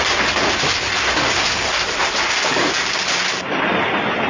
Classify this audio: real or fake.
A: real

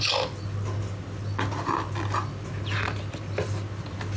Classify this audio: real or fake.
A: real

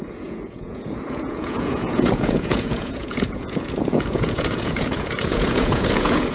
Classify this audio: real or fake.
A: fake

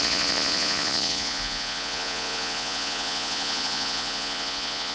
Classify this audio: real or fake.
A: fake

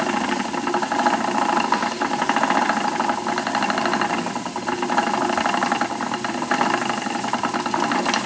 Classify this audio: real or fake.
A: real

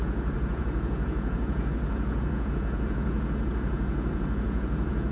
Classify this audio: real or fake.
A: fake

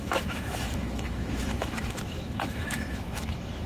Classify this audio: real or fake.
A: fake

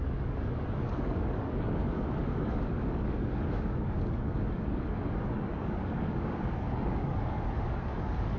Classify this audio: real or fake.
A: fake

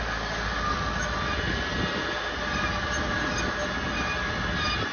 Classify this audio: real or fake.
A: real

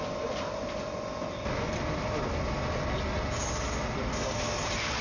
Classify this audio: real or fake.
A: real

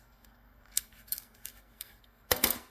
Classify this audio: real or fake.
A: fake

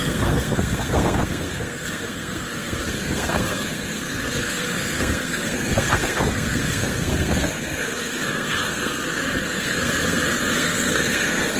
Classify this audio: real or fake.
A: fake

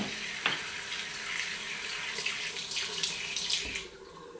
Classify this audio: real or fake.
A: real